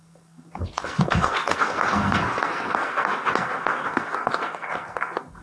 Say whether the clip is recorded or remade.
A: remade